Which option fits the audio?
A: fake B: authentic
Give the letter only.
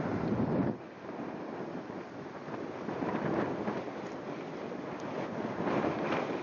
A